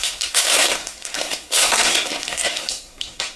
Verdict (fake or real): fake